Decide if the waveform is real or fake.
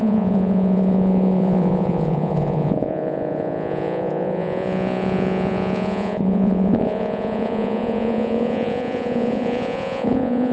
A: fake